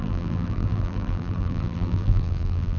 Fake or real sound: fake